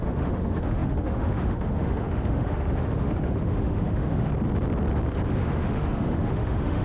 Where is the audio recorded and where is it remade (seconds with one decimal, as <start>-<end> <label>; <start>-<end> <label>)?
0.0-4.3 remade; 4.3-5.3 recorded; 5.3-6.8 remade